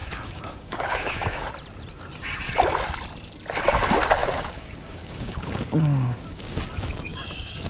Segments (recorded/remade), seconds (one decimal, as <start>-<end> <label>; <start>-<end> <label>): 0.0-1.5 remade; 1.5-4.2 recorded; 4.2-6.6 remade; 6.6-7.1 recorded; 7.1-7.7 remade